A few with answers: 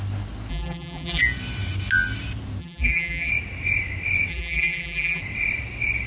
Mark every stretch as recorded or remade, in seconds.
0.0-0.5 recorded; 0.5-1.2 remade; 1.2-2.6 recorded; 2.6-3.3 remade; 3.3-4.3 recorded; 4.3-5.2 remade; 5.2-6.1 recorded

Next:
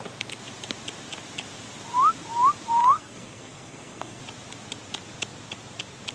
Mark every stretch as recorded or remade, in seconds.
0.0-2.8 recorded; 2.8-4.2 remade; 4.2-6.1 recorded

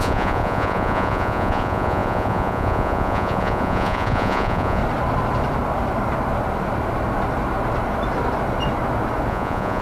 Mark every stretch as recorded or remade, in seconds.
0.0-4.8 remade; 4.8-9.3 recorded; 9.3-9.8 remade

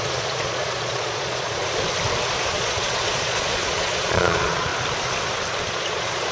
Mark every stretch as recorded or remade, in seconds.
0.0-1.6 remade; 1.6-2.4 recorded; 2.4-4.7 remade; 4.7-5.7 recorded; 5.7-6.3 remade

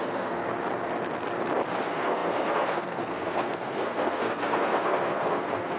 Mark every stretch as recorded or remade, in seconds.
0.0-0.4 remade; 0.4-1.8 recorded; 1.8-5.8 remade

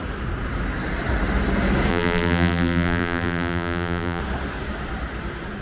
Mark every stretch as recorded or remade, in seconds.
0.0-1.9 recorded; 1.9-4.2 remade; 4.2-5.6 recorded

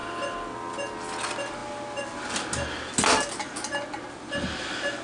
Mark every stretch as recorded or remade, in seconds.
0.0-5.0 recorded

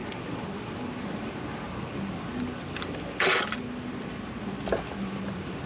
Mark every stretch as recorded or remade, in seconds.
0.0-5.7 recorded